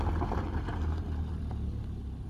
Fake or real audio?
real